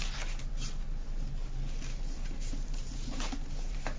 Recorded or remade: remade